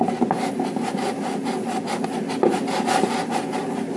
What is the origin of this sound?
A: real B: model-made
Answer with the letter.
A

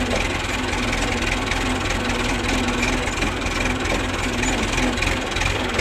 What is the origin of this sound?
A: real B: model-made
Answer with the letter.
A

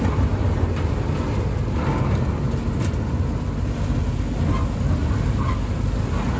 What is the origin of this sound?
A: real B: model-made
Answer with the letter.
A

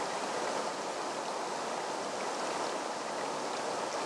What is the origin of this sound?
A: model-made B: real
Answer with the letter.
B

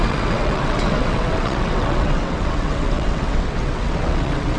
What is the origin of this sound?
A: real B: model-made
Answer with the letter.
B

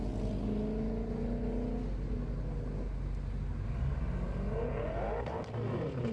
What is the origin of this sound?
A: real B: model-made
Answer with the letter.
A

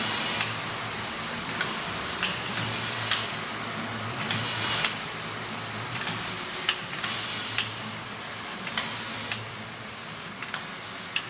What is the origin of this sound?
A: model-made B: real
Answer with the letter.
B